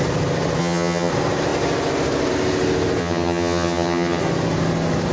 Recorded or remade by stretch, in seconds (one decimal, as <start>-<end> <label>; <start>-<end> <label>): 0.0-0.6 recorded; 0.6-1.1 remade; 1.1-3.0 recorded; 3.0-4.2 remade; 4.2-5.1 recorded